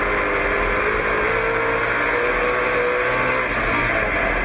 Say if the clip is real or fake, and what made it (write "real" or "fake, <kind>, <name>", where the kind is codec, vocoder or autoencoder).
real